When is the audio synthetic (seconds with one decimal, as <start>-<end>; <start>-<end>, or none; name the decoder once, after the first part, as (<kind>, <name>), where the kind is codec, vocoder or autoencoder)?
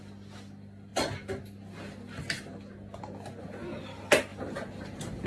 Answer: none